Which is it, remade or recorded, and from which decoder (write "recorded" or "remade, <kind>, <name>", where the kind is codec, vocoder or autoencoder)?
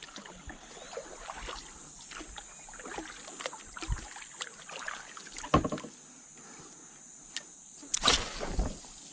recorded